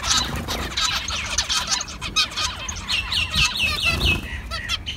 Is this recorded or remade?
recorded